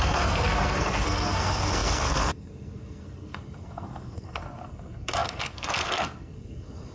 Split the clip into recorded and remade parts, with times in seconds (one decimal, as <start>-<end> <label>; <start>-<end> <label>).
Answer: 0.0-6.9 remade